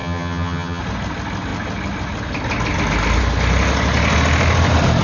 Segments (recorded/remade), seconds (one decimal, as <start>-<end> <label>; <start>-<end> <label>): 0.0-0.8 remade; 0.8-5.0 recorded